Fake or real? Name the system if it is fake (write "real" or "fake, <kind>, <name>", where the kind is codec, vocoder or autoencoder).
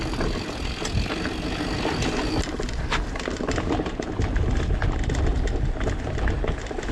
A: real